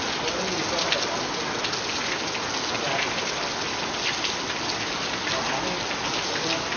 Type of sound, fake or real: real